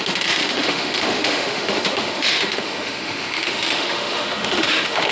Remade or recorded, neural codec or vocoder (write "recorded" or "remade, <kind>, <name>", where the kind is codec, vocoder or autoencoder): remade, autoencoder, DAC-VAE